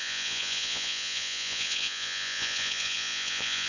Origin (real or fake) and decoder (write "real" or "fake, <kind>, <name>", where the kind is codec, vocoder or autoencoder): fake, vocoder, Vocos